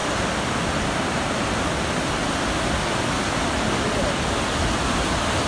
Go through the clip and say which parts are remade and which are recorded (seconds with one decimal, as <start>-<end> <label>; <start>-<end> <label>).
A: 0.0-5.5 recorded

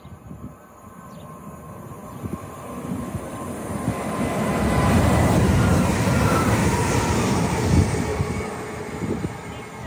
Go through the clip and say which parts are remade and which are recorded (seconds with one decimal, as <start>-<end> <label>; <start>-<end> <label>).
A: 0.0-8.1 recorded; 8.1-8.6 remade; 8.6-9.9 recorded

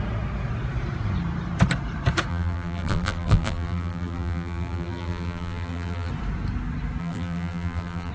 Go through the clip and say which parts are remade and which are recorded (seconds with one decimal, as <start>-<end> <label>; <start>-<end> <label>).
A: 0.0-2.3 recorded; 2.3-6.1 remade; 6.1-7.0 recorded; 7.0-8.1 remade

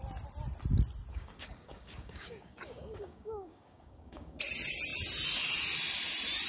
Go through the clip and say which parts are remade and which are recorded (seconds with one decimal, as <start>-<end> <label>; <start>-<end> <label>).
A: 0.0-1.1 recorded; 1.1-4.4 remade; 4.4-6.5 recorded